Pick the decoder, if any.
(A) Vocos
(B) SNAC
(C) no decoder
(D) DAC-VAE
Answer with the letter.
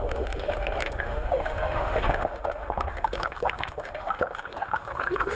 D